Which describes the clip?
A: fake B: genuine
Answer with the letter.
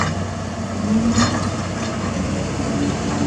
B